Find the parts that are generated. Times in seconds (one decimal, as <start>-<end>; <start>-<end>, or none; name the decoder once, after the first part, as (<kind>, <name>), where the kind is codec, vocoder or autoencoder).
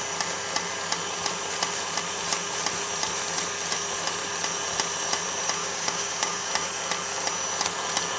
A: 5.6-6.5 (codec, DAC)